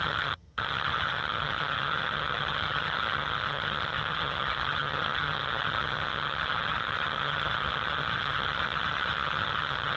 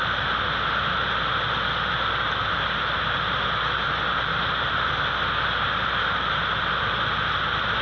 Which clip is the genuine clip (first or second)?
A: second